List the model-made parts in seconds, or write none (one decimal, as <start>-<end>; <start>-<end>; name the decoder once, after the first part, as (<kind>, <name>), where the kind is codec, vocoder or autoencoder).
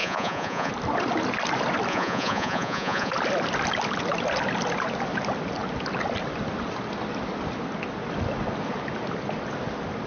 0.0-0.7 (vocoder, Vocos); 1.9-3.1